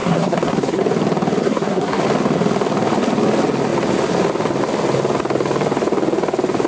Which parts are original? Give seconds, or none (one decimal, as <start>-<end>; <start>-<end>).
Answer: 0.8-1.4; 2.0-6.7